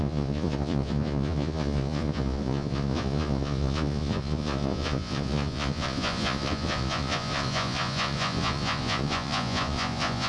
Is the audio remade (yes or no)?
yes